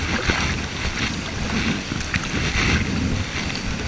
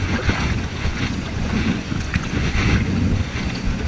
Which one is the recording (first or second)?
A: first